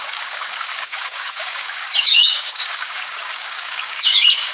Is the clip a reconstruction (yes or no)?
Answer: yes